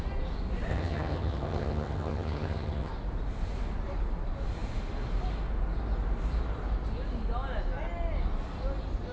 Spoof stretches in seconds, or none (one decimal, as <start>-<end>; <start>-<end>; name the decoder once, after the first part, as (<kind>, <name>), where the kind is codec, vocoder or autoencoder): 0.7-2.9 (vocoder, HiFi-GAN)